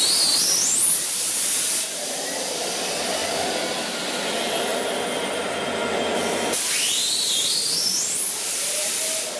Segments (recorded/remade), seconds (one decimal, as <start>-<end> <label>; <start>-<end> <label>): 0.0-9.4 recorded